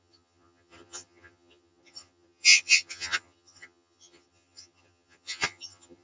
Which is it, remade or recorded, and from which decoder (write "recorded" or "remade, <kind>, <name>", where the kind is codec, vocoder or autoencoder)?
remade, vocoder, HiFi-GAN